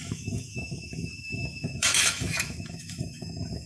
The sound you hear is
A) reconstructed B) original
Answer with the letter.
A